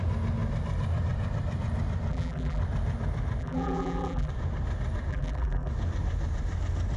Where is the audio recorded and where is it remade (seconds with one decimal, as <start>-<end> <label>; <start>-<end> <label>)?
0.0-2.1 recorded; 2.1-2.6 remade; 2.6-3.4 recorded; 3.4-4.3 remade; 4.3-5.1 recorded; 5.1-5.7 remade; 5.7-7.0 recorded